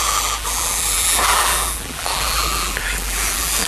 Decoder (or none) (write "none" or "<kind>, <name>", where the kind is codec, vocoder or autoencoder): vocoder, BigVGAN v2